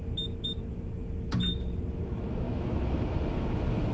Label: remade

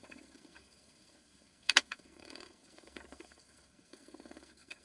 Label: remade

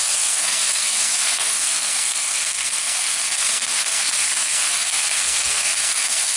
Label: remade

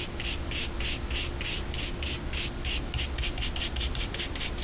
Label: recorded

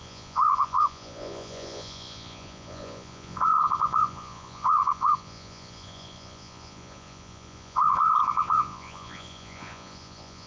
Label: remade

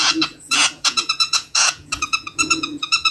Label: remade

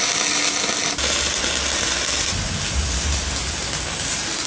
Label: recorded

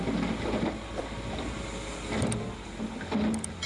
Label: recorded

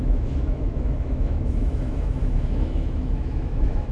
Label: remade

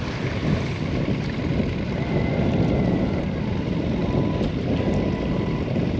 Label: recorded